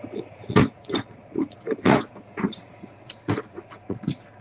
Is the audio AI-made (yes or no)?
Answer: yes